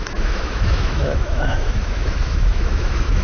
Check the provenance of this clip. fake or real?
fake